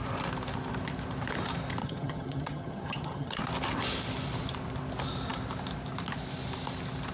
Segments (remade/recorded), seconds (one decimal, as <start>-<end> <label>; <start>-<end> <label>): 0.0-1.8 recorded; 1.8-3.4 remade; 3.4-7.1 recorded